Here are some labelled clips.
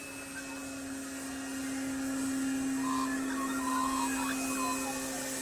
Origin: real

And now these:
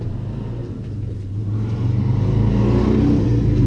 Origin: real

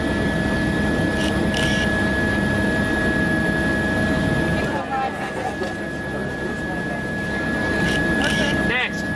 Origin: real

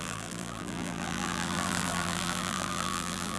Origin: fake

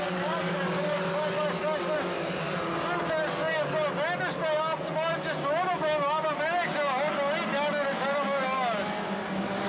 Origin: real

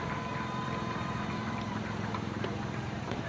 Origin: fake